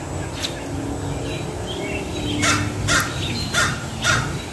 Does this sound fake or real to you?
real